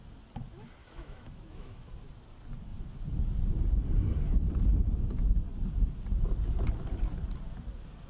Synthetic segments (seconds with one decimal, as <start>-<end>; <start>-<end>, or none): 0.8-1.9

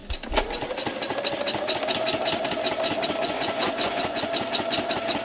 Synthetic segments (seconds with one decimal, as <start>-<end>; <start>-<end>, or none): 3.2-4.3

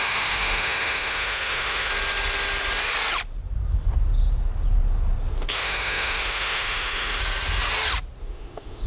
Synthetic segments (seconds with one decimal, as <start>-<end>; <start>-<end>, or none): 0.0-1.9; 5.3-7.2; 8.2-8.9

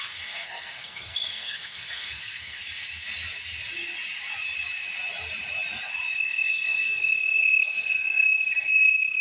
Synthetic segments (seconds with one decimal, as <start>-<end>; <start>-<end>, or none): 0.0-2.6; 6.2-9.2

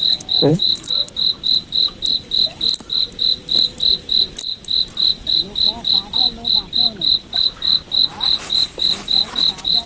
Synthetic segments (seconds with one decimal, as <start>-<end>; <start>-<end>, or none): 0.5-1.1

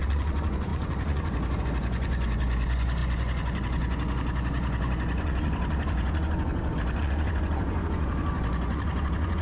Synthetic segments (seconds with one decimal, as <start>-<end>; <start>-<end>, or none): 0.0-9.4